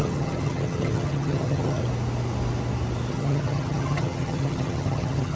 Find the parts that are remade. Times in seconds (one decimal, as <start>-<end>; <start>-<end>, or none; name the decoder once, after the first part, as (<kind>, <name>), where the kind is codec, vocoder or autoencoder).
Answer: 0.0-1.8 (vocoder, HiFi-GAN); 3.1-5.3